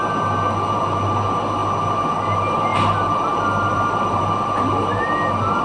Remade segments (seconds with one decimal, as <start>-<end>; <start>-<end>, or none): 2.7-4.2